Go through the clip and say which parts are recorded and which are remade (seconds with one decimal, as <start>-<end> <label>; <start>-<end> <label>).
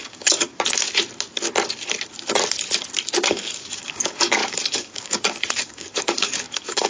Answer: 0.0-0.5 remade; 0.5-3.3 recorded; 3.3-6.9 remade